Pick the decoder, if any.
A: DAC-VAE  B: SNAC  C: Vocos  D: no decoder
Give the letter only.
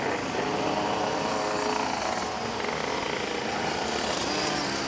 D